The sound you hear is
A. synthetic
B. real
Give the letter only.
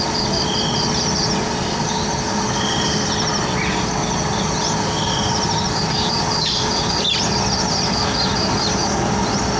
B